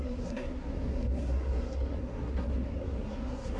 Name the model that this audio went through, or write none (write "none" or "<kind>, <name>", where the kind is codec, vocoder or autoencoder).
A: codec, SNAC